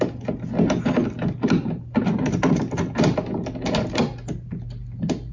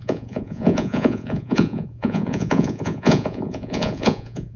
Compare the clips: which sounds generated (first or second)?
second